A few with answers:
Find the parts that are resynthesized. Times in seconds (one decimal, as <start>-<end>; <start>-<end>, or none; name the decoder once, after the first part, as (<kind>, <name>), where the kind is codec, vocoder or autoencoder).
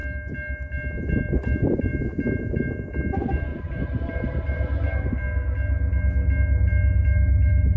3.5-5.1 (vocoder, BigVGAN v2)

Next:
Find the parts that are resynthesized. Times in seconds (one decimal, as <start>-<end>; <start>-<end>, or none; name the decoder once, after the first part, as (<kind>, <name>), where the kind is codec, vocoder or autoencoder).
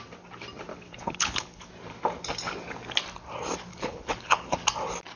0.7-1.7 (codec, HILCodec); 3.7-4.6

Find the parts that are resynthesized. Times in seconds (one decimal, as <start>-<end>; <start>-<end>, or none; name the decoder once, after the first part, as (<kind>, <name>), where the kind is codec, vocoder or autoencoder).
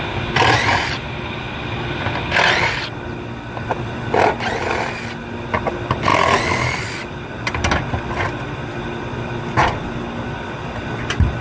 none